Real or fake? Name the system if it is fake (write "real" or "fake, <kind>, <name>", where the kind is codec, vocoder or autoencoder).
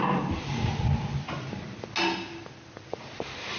real